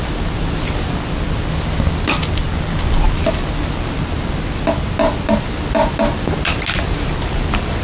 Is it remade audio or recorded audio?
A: recorded